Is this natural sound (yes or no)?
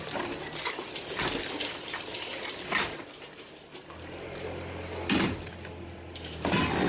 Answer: yes